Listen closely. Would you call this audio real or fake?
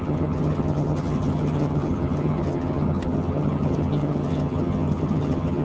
fake